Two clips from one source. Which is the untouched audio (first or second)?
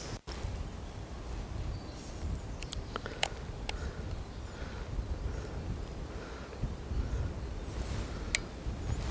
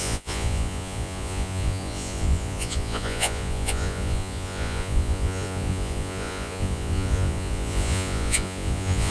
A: first